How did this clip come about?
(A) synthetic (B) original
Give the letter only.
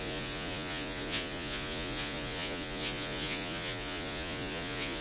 A